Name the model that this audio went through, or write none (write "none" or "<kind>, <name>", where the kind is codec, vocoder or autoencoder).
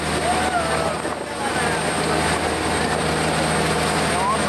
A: none